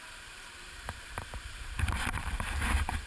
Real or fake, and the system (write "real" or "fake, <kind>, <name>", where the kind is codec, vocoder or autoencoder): fake, vocoder, BigVGAN v2